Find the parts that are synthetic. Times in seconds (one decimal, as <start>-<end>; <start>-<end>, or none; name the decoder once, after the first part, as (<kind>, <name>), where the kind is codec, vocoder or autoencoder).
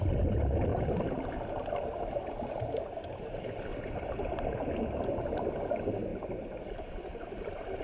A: 3.7-5.1 (vocoder, BigVGAN v2)